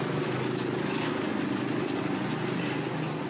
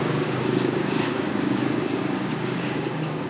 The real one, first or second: first